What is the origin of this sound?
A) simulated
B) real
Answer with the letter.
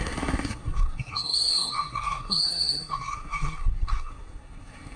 A